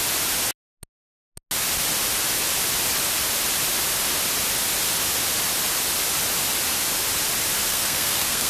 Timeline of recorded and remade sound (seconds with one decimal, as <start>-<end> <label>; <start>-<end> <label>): 0.0-7.7 recorded; 7.7-8.5 remade